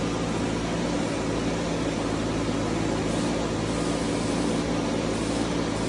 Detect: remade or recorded recorded